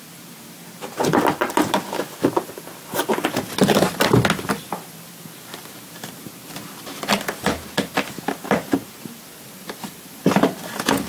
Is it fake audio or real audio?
fake